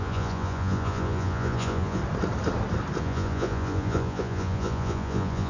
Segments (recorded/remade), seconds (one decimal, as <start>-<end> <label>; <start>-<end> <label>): 0.0-2.0 remade; 2.0-3.0 recorded; 3.0-5.5 remade